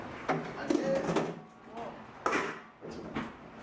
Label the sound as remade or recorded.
recorded